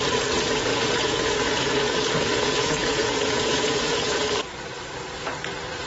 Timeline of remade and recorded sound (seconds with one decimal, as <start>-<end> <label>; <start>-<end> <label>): 0.0-0.7 recorded; 0.7-4.2 remade; 4.2-5.9 recorded